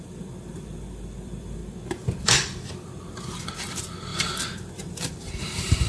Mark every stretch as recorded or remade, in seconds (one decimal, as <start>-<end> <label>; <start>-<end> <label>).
0.0-1.6 remade; 1.6-2.2 recorded; 2.2-5.9 remade